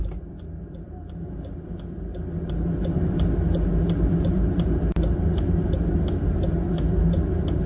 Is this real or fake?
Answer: real